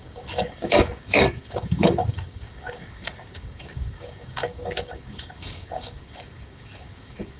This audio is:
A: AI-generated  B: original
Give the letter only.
A